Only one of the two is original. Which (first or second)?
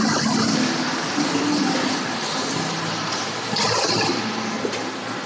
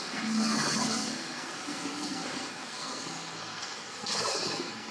first